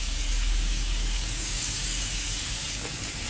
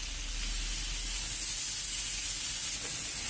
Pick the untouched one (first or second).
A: second